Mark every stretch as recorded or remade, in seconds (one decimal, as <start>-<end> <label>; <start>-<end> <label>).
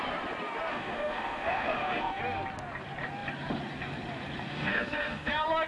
0.0-0.7 recorded; 0.7-2.2 remade; 2.2-4.5 recorded; 4.5-5.3 remade; 5.3-5.7 recorded